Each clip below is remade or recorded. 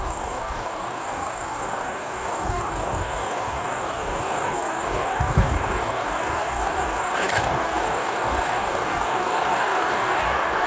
remade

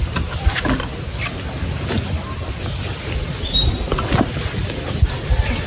recorded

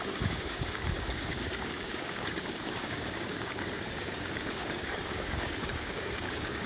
remade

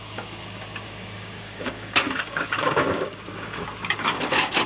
remade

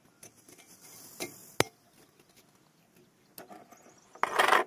recorded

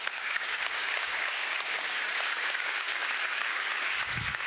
remade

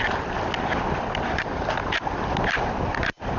recorded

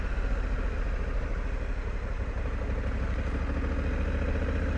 recorded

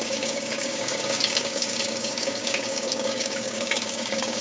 remade